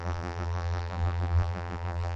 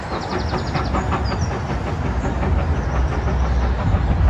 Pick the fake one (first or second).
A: first